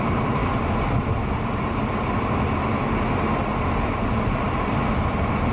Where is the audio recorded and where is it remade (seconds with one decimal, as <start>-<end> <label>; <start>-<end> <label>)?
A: 0.0-5.5 recorded